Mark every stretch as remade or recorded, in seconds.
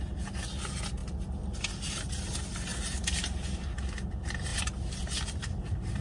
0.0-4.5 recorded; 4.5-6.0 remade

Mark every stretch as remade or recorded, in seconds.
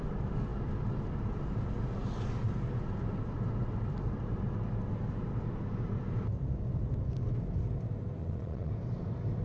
0.0-8.2 recorded; 8.2-8.7 remade; 8.7-9.4 recorded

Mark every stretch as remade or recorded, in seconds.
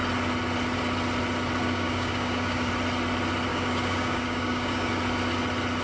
0.0-1.6 recorded; 1.6-2.7 remade; 2.7-3.5 recorded; 3.5-4.9 remade; 4.9-5.8 recorded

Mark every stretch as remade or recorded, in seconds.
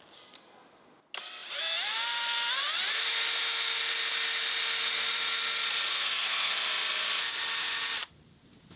0.0-5.9 recorded; 5.9-6.5 remade; 6.5-8.8 recorded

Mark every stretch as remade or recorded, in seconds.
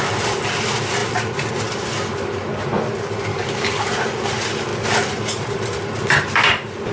0.0-3.3 recorded; 3.3-3.9 remade; 3.9-6.9 recorded